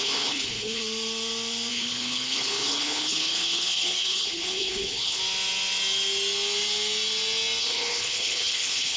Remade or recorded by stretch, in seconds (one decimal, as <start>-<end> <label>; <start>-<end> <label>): 0.0-0.8 remade; 0.8-1.7 recorded; 1.7-5.2 remade; 5.2-7.6 recorded; 7.6-9.0 remade

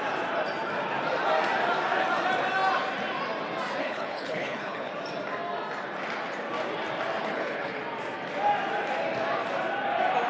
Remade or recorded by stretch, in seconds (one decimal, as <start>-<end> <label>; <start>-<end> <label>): 0.0-3.8 recorded; 3.8-4.9 remade; 4.9-7.2 recorded; 7.2-7.8 remade; 7.8-10.3 recorded

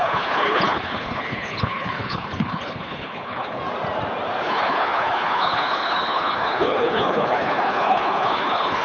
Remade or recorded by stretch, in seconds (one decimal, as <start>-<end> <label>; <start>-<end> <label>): 0.0-3.6 remade; 3.6-4.4 recorded; 4.4-8.8 remade

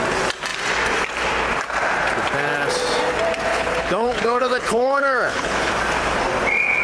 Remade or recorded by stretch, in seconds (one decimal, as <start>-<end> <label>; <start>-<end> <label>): 0.0-3.5 recorded; 3.5-5.7 remade; 5.7-6.8 recorded